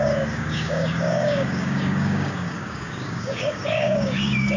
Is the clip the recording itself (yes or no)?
no